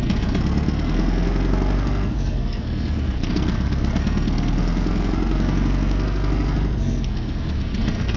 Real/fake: fake